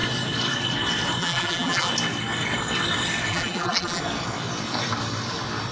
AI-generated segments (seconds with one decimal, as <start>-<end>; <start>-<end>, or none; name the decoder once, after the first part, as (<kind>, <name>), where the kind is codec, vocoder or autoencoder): 1.2-1.9 (vocoder, BigVGAN v2); 3.3-4.0